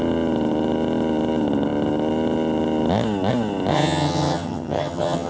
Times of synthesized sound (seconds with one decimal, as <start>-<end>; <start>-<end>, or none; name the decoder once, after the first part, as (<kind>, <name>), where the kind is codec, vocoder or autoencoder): 3.7-5.3 (vocoder, HiFi-GAN)